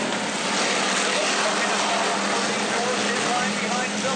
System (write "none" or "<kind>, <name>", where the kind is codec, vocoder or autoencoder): none